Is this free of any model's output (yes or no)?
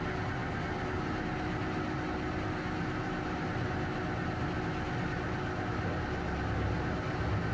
yes